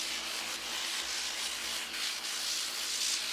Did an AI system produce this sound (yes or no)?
no